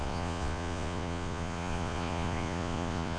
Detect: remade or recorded remade